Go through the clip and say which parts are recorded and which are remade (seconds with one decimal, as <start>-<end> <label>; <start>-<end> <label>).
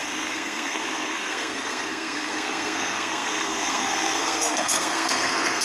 0.0-5.6 remade